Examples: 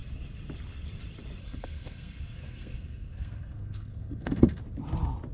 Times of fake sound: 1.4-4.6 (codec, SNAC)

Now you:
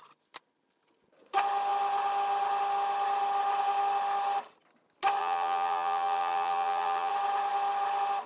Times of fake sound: 5.2-7.1 (vocoder, BigVGAN v2)

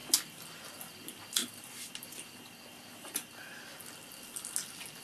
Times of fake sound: none

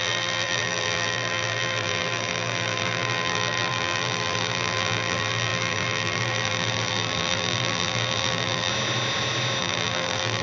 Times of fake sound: 0.0-8.7 (vocoder, BigVGAN v2); 9.6-10.4